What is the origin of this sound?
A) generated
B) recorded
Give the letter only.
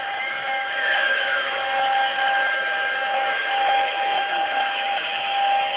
A